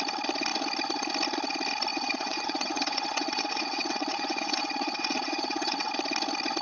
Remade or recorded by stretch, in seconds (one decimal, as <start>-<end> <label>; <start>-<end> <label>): 0.0-1.9 recorded; 1.9-5.9 remade; 5.9-6.6 recorded